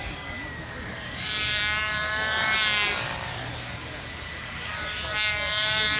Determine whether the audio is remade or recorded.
remade